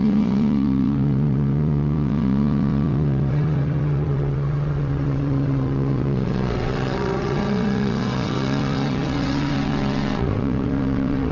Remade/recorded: remade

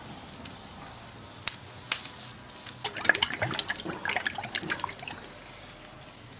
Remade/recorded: recorded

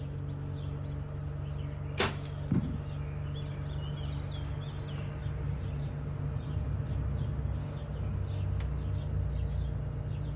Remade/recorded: recorded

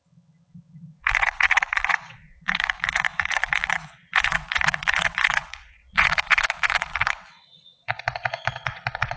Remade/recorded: remade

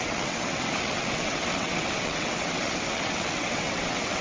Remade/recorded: remade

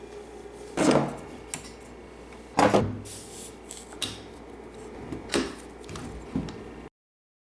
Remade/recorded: recorded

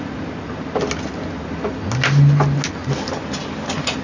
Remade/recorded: recorded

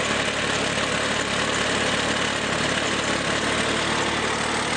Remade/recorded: recorded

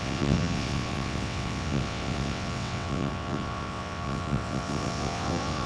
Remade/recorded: remade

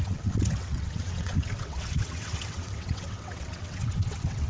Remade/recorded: remade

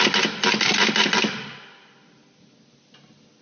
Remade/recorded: recorded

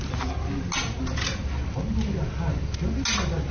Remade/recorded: recorded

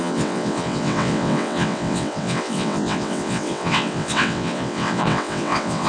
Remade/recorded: remade